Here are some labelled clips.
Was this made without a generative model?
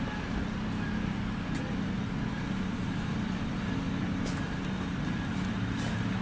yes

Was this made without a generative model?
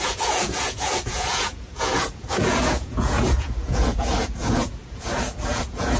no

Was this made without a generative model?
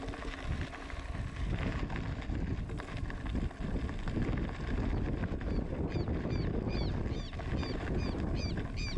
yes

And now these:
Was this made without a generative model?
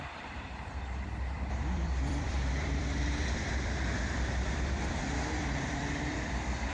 no